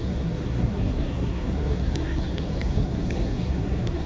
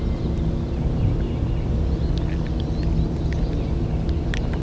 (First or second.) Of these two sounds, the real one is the second